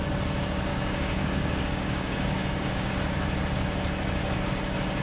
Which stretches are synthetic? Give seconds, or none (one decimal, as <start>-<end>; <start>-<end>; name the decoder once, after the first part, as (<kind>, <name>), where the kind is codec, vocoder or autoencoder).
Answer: 0.7-2.9 (codec, DAC)